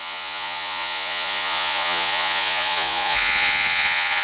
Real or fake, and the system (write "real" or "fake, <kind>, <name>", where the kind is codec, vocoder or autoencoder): fake, vocoder, Vocos